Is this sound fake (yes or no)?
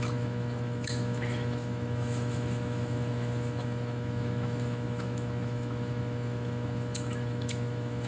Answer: yes